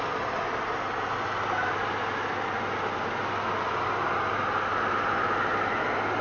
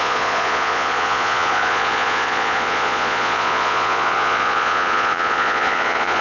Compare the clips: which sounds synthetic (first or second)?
second